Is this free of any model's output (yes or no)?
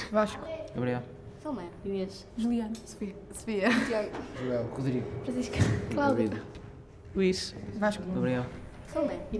yes